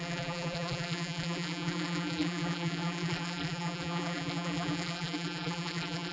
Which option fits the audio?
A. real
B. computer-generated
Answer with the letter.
B